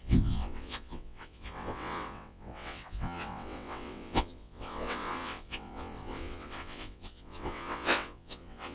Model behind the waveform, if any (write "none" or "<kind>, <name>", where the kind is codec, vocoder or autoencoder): vocoder, WaveNeXt